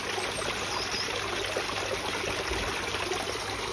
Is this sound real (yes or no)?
yes